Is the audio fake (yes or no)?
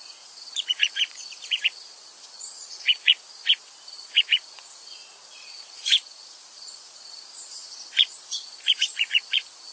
yes